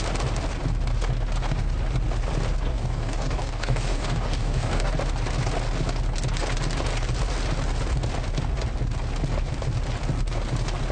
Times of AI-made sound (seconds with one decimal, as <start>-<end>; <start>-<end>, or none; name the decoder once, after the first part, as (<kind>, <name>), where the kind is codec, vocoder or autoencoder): 2.7-4.9 (codec, DAC)